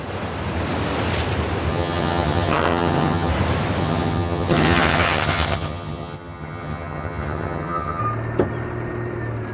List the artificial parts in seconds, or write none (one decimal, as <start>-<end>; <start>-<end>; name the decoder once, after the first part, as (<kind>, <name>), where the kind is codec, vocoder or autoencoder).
1.7-3.3 (vocoder, HiFi-GAN); 3.8-8.0